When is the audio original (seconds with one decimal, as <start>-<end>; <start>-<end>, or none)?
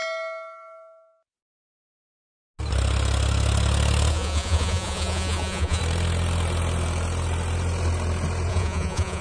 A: 0.0-4.1; 5.8-8.5